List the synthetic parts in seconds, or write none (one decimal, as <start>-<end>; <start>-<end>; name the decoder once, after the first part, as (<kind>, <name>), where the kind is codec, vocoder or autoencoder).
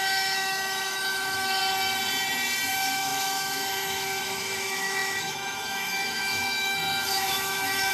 0.0-1.6 (autoencoder, DAC-VAE); 2.7-7.9